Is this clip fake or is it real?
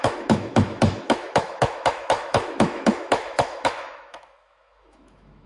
fake